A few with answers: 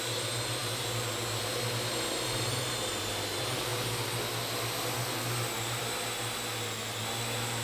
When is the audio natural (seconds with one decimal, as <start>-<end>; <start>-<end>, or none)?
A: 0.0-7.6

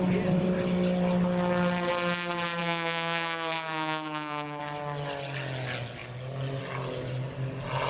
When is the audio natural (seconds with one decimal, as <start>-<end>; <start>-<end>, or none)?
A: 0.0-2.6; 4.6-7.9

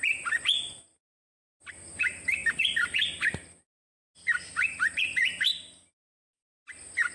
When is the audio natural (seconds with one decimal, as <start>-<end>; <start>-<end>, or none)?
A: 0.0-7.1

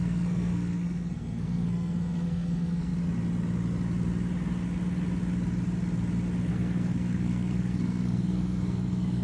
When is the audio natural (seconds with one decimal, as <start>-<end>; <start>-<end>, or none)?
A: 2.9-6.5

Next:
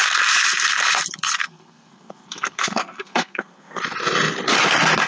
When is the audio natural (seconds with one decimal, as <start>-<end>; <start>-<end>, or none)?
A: 0.0-1.4; 3.8-5.1

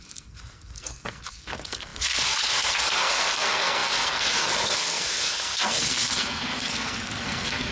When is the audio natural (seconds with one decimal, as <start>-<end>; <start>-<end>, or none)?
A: none